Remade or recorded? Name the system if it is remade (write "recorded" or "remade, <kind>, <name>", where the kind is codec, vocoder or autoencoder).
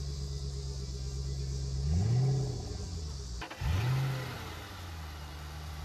recorded